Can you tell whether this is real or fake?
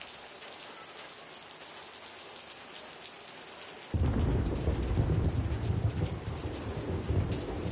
real